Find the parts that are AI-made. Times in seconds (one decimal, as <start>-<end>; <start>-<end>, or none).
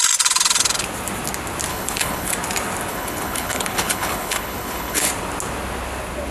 1.7-2.3; 2.9-5.1